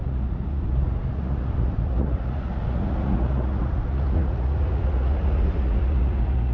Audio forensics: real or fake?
fake